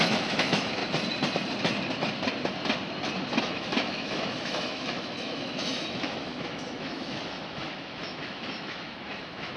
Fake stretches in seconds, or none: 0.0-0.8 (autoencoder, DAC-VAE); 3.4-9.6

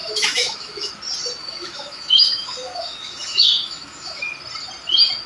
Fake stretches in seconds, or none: 0.0-0.9 (autoencoder, DAC-VAE); 1.4-4.2

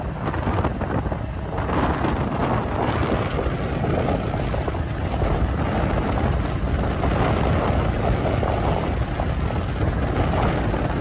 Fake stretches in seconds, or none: none